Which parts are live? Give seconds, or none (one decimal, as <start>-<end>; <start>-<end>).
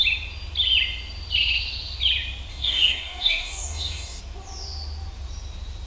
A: 0.0-2.5; 4.2-5.9